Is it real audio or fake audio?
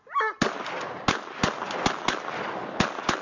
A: real